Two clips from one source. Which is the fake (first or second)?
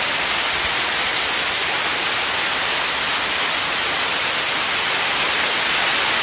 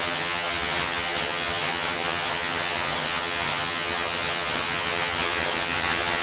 second